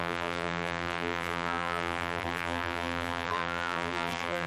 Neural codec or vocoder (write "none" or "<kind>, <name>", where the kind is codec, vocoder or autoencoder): vocoder, BigVGAN v2